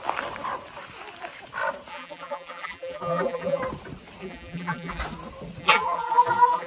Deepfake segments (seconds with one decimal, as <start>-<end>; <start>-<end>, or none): 1.9-3.6; 4.2-5.0; 5.6-6.7